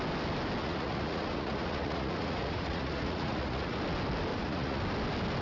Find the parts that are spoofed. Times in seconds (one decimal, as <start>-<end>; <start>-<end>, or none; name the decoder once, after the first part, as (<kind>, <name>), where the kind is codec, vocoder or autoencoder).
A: 0.6-3.8 (vocoder, Vocos); 4.3-4.8